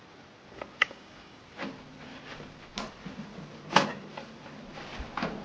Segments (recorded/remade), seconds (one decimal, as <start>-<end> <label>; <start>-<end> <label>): 0.0-0.8 recorded; 0.8-1.4 remade; 1.4-5.4 recorded